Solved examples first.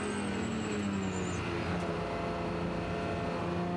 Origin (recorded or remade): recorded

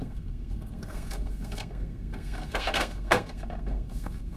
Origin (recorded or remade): remade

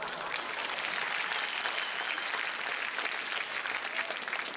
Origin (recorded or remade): recorded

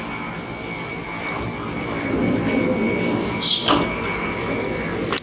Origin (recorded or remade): recorded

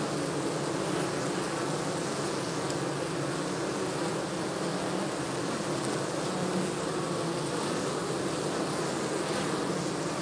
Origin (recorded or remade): recorded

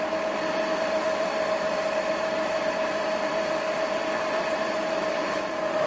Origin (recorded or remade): remade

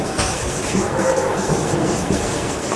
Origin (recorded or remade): remade